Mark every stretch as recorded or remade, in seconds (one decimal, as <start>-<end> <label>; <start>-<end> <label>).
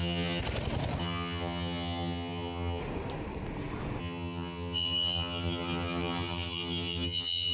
0.0-0.4 remade; 0.4-1.0 recorded; 1.0-2.8 remade; 2.8-4.0 recorded; 4.0-7.5 remade